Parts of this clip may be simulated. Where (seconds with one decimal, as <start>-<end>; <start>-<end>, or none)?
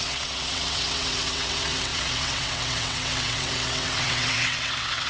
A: 0.0-5.1